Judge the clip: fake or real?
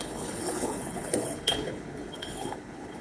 fake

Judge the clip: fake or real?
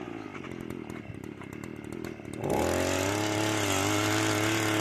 real